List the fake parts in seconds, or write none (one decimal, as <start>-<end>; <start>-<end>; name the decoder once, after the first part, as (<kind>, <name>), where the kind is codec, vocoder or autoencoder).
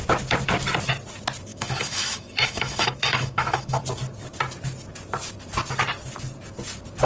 1.5-3.8 (autoencoder, DAC-VAE)